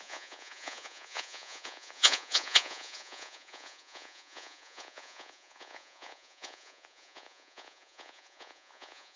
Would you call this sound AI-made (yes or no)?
yes